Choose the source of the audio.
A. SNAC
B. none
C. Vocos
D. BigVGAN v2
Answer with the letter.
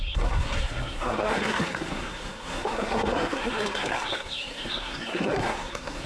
A